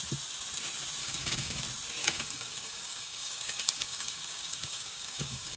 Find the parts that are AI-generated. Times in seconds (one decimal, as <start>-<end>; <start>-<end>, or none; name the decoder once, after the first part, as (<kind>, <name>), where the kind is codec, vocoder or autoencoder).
1.0-1.6 (codec, DAC); 2.0-5.6